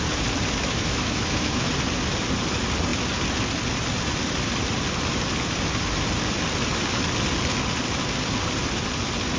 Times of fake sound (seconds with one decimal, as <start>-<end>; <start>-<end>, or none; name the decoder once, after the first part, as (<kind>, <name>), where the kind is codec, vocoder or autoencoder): 0.6-1.7 (autoencoder, DAC-VAE)